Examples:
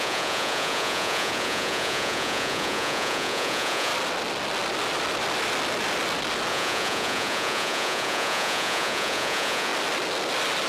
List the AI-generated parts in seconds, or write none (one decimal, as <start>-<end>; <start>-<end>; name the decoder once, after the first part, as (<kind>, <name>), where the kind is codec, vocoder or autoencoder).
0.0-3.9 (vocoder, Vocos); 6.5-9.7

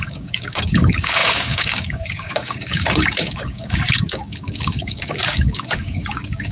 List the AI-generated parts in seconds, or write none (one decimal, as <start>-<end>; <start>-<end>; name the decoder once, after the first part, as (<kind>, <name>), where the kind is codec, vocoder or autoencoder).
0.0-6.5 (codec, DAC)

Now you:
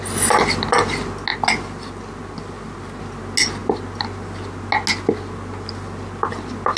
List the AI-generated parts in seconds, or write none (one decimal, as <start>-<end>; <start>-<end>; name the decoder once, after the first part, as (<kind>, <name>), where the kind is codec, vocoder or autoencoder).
none

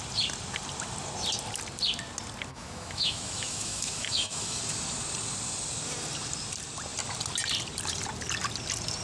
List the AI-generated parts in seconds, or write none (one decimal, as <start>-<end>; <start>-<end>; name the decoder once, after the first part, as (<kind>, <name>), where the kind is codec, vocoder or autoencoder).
2.5-4.6 (autoencoder, DAC-VAE)